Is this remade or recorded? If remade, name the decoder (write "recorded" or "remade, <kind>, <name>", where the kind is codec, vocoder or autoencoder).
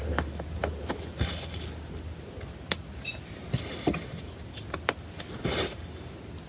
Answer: recorded